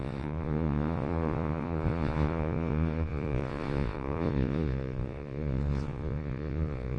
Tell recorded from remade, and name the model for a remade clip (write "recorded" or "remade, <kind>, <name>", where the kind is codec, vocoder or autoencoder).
remade, vocoder, Vocos